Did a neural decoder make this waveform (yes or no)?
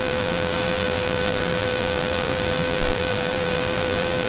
yes